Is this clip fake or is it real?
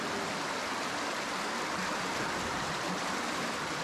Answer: real